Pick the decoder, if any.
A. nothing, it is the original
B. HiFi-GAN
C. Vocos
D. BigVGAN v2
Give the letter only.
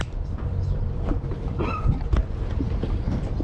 D